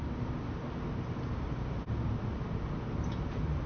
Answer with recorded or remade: recorded